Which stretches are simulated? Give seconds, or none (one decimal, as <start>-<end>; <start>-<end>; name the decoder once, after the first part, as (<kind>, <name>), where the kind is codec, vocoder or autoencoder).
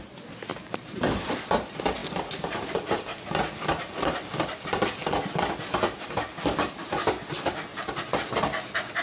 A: 0.5-1.2 (vocoder, BigVGAN v2); 7.7-8.3